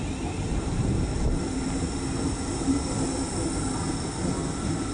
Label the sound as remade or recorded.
recorded